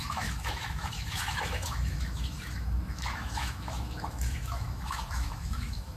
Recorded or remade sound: remade